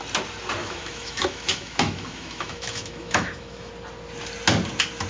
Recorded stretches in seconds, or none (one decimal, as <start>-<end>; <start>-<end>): 0.0-0.6; 3.7-5.1

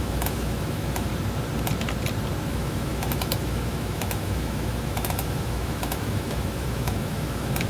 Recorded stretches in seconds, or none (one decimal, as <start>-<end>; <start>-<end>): 1.1-2.5

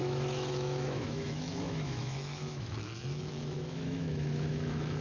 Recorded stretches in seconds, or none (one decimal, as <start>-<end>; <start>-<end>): none

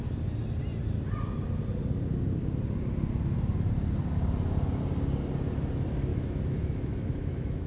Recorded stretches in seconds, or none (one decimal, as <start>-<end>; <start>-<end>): 0.0-6.1

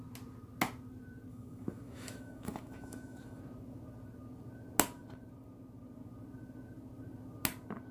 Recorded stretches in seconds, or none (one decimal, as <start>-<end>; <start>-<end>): 0.0-1.3; 3.4-7.9

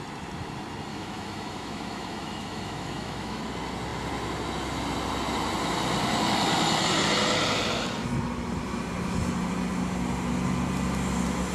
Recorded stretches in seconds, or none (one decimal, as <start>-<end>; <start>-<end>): 0.0-0.9; 3.4-11.5

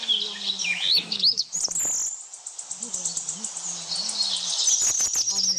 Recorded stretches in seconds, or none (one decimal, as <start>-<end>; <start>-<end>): 0.0-0.6; 1.6-5.6